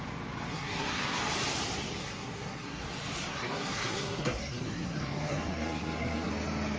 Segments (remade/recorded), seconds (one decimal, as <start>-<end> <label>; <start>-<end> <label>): 0.0-0.5 recorded; 0.5-1.2 remade; 1.2-2.0 recorded; 2.0-2.8 remade; 2.8-3.3 recorded; 3.3-6.3 remade; 6.3-6.8 recorded